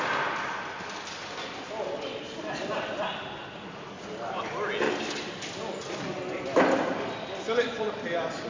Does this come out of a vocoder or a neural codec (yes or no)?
no